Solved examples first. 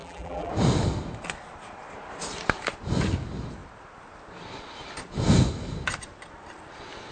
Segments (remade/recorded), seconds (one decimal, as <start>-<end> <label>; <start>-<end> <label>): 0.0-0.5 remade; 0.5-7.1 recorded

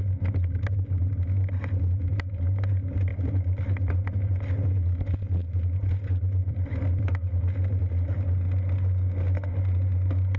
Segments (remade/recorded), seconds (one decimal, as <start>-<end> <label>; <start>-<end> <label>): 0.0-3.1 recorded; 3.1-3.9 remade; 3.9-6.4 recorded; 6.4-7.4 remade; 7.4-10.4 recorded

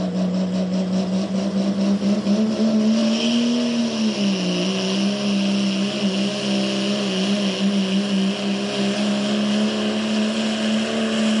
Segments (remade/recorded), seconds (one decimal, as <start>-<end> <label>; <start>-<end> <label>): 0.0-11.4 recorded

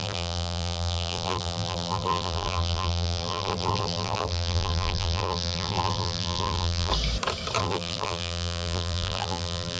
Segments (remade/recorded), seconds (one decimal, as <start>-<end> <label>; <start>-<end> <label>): 0.0-6.9 remade; 6.9-7.6 recorded; 7.6-9.8 remade

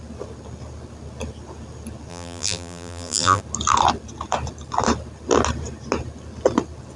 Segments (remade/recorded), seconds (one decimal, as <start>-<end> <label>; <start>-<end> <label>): 0.0-2.1 recorded; 2.1-3.4 remade; 3.4-7.0 recorded

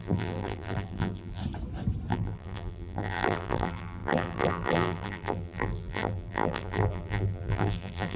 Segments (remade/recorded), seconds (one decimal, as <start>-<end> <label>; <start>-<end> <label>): 0.0-1.4 remade; 1.4-2.1 recorded; 2.1-8.2 remade